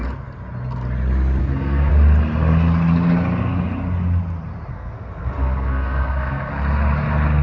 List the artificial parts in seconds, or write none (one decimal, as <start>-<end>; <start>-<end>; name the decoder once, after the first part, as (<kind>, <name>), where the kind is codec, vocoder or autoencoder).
1.4-1.9 (codec, SNAC); 4.7-6.5